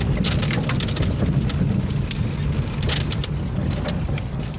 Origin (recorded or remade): recorded